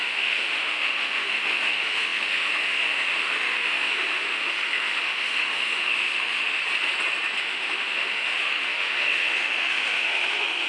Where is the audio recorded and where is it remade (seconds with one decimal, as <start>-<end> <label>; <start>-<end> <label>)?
0.0-6.6 remade; 6.6-7.4 recorded; 7.4-10.7 remade